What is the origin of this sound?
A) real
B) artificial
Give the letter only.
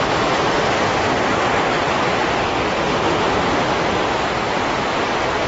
A